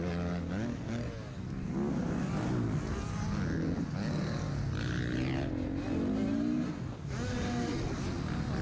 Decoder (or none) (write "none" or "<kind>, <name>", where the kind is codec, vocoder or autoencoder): none